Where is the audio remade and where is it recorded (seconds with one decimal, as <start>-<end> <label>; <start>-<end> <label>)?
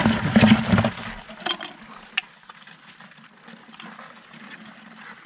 0.0-5.3 recorded